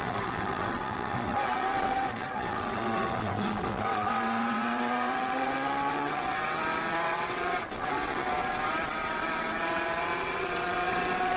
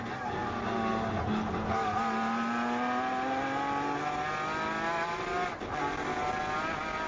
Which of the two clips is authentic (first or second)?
second